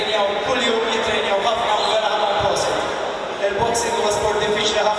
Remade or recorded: recorded